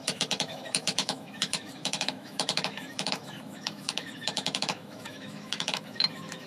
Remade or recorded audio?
remade